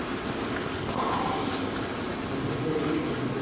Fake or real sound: real